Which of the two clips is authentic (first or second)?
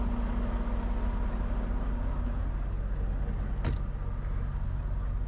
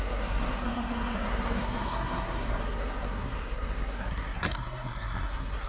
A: first